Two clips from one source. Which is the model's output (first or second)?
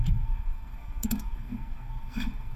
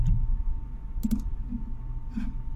first